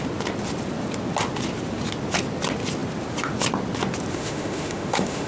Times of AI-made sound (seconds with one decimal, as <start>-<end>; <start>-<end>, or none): 4.1-5.3